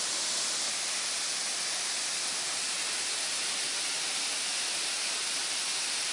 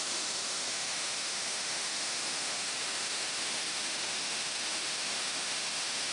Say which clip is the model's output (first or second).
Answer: second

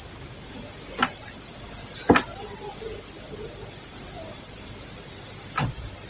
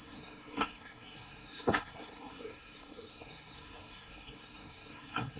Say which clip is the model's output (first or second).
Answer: second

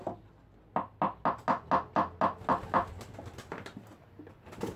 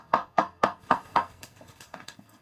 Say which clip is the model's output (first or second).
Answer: second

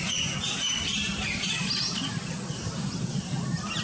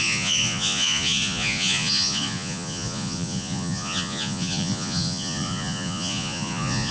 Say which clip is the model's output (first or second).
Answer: second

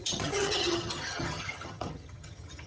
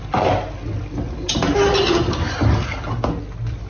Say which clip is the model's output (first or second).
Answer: first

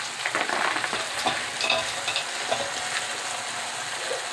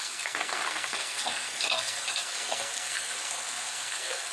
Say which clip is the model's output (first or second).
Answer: second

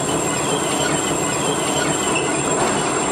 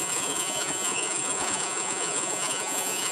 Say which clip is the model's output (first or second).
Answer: second